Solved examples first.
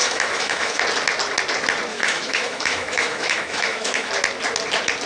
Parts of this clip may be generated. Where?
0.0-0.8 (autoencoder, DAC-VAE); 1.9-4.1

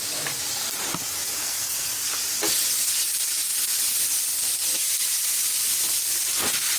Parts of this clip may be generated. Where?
1.4-2.1 (codec, SNAC)

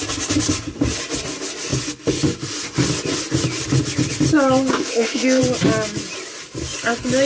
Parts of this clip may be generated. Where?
4.7-5.4 (codec, ZipCodec)

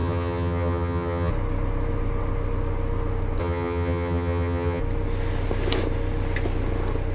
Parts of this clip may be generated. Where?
0.0-1.3 (vocoder, HiFi-GAN); 3.4-4.8

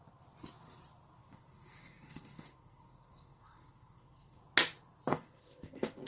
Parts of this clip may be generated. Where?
1.2-4.4 (codec, SNAC); 5.1-6.1